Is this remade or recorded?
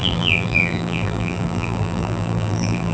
remade